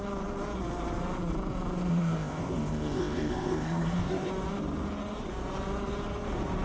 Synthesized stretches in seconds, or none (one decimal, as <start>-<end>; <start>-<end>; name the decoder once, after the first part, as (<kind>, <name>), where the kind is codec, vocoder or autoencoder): 1.9-4.3 (codec, ZipCodec)

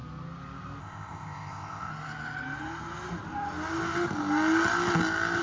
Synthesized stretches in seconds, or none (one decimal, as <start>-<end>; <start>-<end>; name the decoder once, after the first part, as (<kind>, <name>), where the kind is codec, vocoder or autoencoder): 0.8-1.9 (codec, ZipCodec)

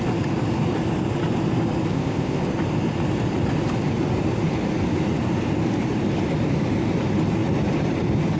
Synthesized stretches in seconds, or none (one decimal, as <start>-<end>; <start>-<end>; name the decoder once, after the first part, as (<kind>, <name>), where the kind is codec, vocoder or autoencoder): 1.9-2.4 (codec, ZipCodec)

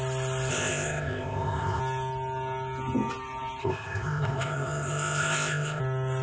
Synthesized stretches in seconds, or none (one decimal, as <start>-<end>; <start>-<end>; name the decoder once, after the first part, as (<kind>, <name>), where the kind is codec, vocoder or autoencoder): 0.5-1.8 (codec, ZipCodec); 3.6-5.8

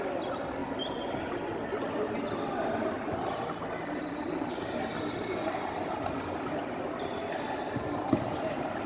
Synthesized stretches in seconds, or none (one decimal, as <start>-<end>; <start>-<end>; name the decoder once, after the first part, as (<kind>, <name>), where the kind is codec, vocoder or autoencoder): none

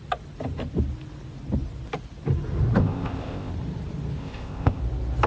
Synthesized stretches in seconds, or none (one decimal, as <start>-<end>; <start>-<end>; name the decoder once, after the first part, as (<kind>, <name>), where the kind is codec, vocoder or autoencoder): 2.8-3.5 (codec, ZipCodec); 4.2-4.8

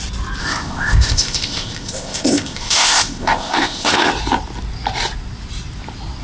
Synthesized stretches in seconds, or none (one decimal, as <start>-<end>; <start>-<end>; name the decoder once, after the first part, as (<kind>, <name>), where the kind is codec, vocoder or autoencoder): 0.4-4.1 (codec, ZipCodec)

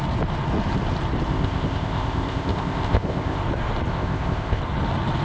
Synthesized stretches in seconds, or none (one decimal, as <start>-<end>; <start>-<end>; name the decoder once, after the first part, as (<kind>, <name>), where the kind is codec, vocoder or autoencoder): 1.3-3.4 (codec, ZipCodec); 3.9-4.6